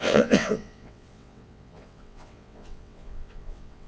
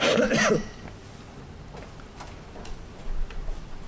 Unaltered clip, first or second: second